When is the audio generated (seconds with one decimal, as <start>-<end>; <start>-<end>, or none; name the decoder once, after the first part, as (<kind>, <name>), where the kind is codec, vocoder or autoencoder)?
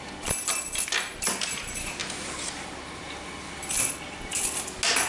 none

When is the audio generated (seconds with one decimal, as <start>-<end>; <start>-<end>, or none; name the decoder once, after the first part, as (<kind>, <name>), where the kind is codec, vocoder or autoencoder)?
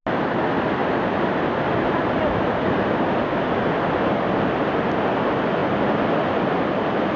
none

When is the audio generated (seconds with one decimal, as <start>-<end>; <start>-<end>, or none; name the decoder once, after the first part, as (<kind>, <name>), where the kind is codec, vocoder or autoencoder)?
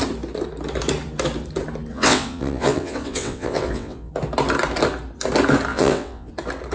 1.9-4.1 (vocoder, WaveNeXt); 5.7-6.3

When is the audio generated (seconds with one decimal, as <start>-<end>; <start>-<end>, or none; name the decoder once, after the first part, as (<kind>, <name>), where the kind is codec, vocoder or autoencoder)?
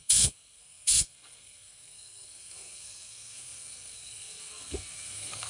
0.0-5.5 (codec, SNAC)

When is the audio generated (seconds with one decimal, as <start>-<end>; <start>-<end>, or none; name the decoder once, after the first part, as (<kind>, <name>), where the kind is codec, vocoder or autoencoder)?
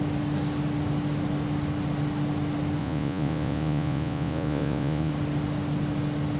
2.8-5.1 (vocoder, Vocos)